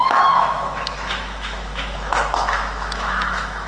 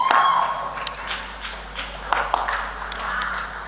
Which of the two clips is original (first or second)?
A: second